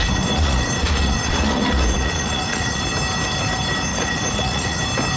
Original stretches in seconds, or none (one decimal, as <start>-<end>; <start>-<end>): 2.8-3.9; 4.8-5.2